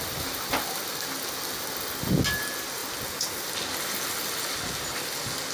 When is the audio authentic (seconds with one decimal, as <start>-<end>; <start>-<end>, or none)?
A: 0.0-5.5